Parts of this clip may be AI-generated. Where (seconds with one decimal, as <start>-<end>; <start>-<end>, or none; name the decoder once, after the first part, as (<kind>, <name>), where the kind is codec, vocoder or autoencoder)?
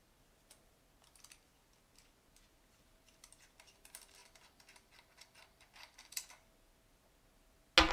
4.2-6.3 (vocoder, BigVGAN v2)